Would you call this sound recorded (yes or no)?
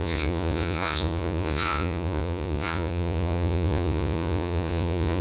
no